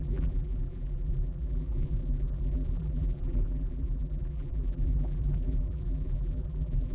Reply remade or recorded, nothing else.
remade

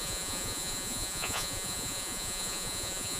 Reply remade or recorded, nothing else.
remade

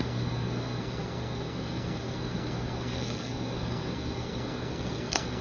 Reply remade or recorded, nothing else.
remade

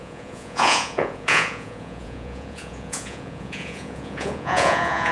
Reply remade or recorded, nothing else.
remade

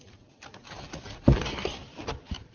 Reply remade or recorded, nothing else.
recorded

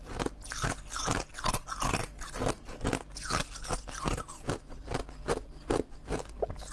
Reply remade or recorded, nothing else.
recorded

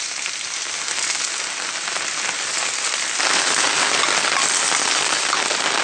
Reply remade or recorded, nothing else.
recorded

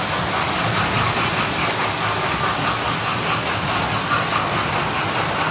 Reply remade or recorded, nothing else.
recorded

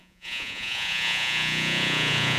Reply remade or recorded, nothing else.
remade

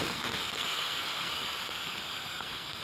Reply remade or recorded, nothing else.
remade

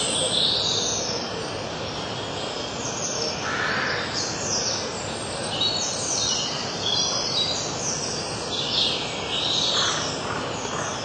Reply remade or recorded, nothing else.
recorded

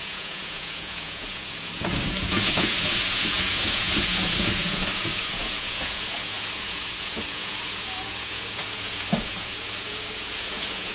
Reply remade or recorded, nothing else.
remade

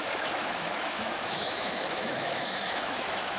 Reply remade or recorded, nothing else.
remade